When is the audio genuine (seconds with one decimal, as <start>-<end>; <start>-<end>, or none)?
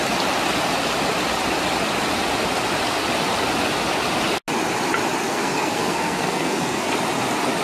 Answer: 0.0-5.3; 6.9-7.6